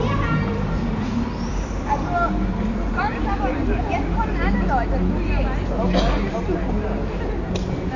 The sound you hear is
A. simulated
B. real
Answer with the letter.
B